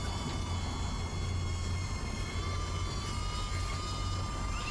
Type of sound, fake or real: real